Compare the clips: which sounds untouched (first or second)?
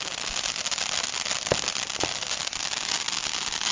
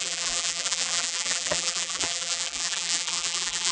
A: first